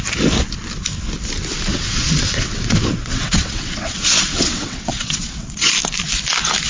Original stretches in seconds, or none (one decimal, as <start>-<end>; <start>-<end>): 0.0-1.7; 5.7-6.7